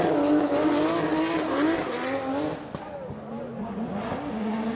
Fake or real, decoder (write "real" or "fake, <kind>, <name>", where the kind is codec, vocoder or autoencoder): real